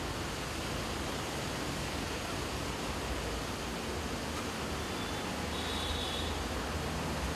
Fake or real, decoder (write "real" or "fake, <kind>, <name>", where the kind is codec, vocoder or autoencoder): real